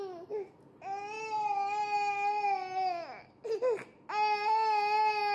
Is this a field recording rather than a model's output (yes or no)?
yes